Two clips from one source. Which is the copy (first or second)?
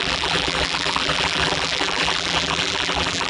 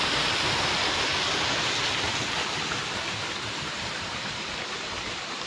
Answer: first